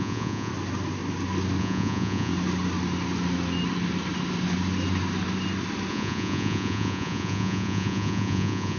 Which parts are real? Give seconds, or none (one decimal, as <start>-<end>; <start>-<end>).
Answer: 0.5-1.6; 2.3-5.9